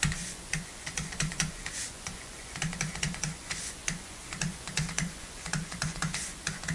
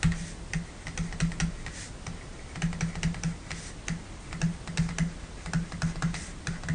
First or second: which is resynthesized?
first